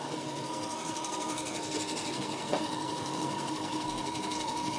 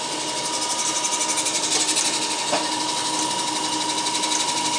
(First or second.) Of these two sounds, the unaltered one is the second